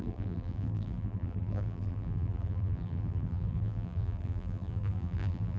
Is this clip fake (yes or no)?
yes